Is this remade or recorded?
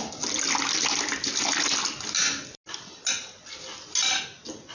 recorded